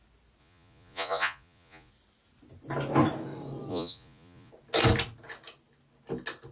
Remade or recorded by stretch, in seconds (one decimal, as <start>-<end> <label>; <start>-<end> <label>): 0.0-0.4 recorded; 0.4-1.9 remade; 1.9-3.7 recorded; 3.7-4.5 remade; 4.5-6.5 recorded